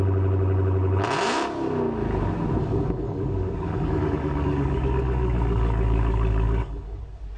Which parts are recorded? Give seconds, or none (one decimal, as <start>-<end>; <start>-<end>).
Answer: 0.0-2.6; 7.0-7.4